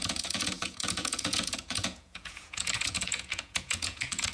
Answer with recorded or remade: remade